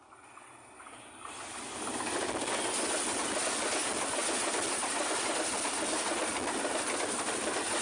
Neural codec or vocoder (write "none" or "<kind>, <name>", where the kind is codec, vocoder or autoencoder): none